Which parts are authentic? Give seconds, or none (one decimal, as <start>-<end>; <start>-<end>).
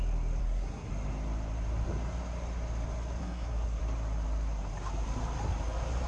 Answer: 0.0-0.4; 0.9-3.2; 3.8-6.1